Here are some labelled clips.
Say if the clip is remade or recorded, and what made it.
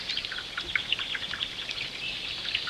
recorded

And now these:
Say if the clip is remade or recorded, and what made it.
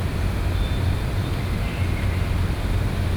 recorded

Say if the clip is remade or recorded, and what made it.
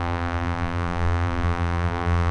remade, vocoder, BigVGAN v2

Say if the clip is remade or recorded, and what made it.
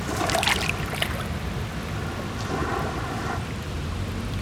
recorded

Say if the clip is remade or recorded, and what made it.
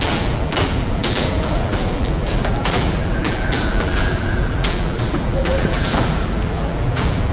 remade, vocoder, BigVGAN v2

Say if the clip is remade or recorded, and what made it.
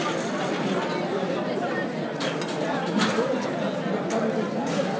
recorded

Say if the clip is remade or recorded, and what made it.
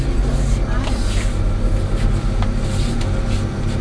recorded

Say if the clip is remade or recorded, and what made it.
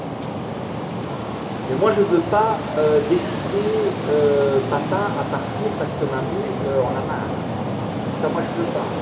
recorded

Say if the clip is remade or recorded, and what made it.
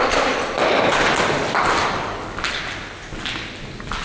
recorded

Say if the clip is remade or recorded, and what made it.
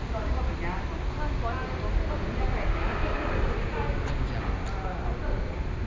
recorded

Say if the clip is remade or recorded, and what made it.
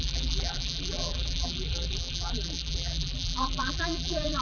remade, vocoder, BigVGAN v2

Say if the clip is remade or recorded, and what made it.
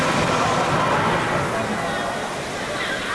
recorded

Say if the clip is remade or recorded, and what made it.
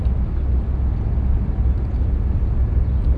recorded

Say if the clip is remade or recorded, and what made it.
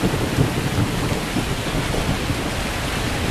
recorded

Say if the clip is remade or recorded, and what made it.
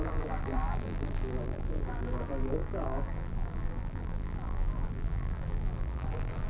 remade, vocoder, BigVGAN v2